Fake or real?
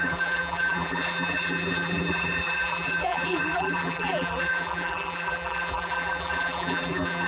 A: fake